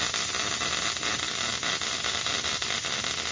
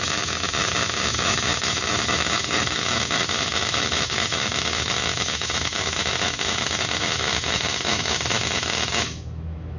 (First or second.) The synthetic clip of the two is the second